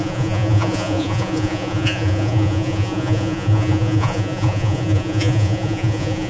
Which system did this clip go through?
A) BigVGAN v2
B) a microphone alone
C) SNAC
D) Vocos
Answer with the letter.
D